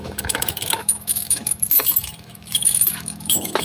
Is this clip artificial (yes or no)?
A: yes